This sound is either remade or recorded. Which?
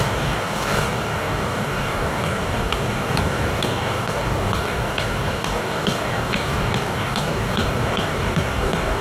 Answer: remade